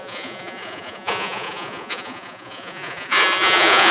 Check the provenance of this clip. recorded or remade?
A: remade